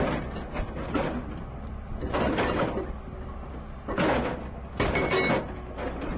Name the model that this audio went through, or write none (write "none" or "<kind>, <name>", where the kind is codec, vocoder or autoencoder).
none